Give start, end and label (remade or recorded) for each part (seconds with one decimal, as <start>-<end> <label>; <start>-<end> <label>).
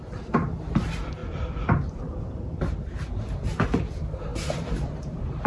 0.0-4.3 remade; 4.3-4.9 recorded; 4.9-5.5 remade